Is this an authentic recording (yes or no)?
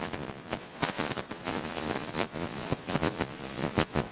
no